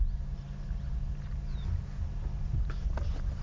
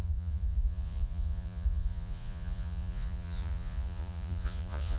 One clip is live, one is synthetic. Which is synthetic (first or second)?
second